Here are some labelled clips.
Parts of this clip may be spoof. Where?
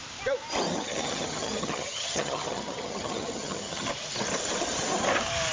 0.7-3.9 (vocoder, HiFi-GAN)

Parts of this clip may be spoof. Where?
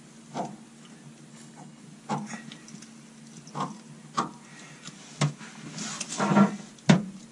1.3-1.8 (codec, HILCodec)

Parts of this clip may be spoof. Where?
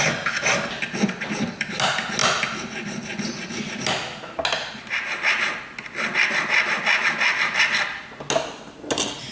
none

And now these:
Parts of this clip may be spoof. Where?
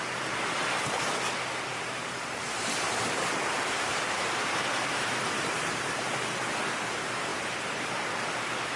1.7-6.0 (vocoder, BigVGAN v2); 7.3-8.1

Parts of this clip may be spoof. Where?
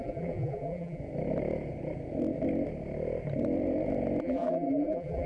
0.0-1.0 (vocoder, BigVGAN v2); 4.2-5.3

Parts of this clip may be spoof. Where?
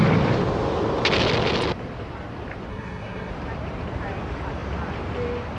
2.7-3.3 (codec, SNAC)